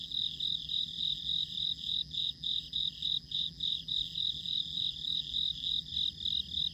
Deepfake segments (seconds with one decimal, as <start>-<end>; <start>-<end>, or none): 0.0-5.9